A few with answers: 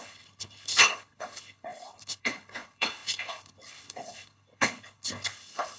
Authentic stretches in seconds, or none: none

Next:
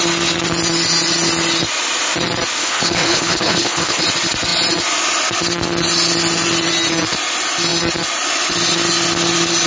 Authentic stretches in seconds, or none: 0.0-2.6; 4.0-9.7

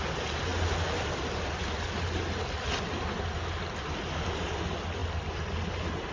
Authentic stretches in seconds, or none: 0.0-6.1

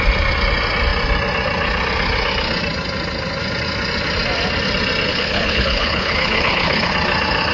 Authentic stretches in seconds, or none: 0.0-5.1; 6.9-7.5

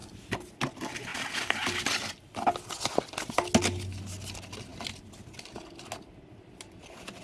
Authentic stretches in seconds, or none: 0.0-7.2

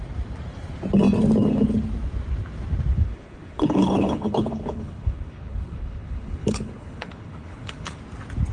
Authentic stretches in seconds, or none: 0.0-2.9; 8.0-8.5

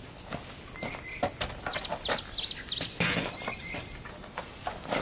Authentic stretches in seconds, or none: 0.0-5.0

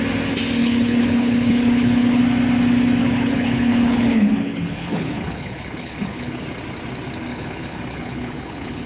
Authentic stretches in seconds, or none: 0.0-0.6; 2.2-3.0; 6.4-7.3